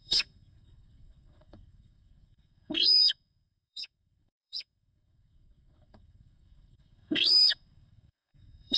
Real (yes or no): no